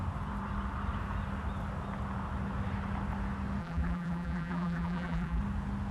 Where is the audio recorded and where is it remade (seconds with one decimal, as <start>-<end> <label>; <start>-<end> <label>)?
0.0-3.6 recorded; 3.6-5.4 remade; 5.4-5.9 recorded